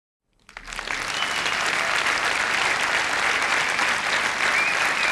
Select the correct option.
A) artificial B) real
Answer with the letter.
B